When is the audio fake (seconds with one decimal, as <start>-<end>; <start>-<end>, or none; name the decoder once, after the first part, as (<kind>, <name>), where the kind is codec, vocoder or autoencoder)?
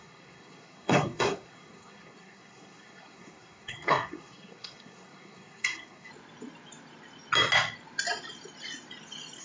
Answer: 0.0-6.1 (codec, SNAC)